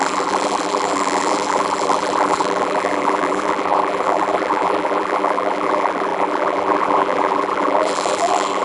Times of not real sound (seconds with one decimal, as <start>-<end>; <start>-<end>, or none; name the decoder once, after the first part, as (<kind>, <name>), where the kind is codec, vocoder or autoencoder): 0.0-8.6 (vocoder, BigVGAN v2)